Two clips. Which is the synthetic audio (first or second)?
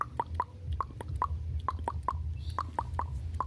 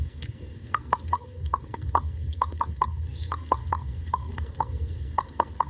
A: second